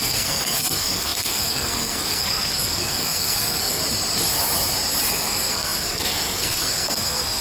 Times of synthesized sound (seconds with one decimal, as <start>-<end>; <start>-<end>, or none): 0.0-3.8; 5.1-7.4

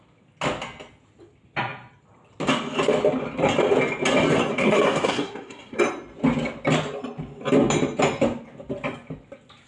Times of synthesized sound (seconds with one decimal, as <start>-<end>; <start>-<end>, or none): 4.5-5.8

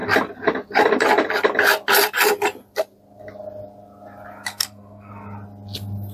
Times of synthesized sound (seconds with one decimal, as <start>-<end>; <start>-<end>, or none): 4.5-5.1